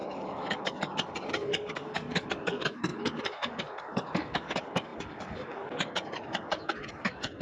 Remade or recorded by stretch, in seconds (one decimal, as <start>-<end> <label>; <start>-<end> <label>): 0.0-7.4 remade